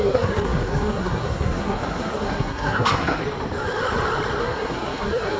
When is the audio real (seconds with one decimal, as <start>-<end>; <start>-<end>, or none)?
3.2-4.4